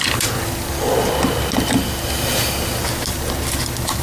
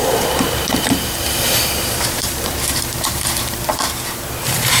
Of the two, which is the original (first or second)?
first